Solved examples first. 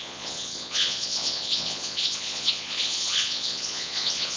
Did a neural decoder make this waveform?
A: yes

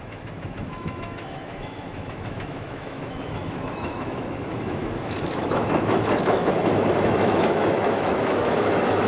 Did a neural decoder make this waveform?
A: yes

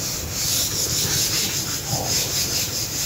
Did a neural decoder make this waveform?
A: no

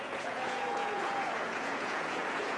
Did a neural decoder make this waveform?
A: yes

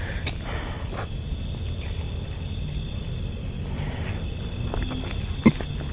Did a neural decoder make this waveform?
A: no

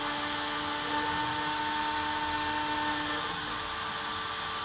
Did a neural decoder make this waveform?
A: no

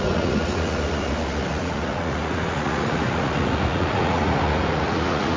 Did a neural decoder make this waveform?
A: yes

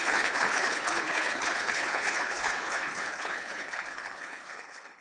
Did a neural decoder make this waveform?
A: yes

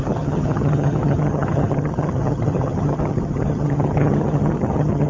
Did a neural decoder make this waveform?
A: yes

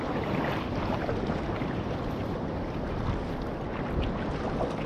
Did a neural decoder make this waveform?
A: no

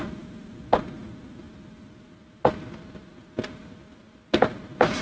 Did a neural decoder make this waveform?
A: no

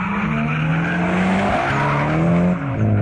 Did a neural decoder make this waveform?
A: no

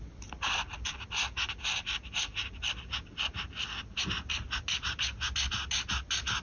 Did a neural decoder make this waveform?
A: no